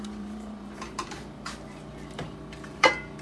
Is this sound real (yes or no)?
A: no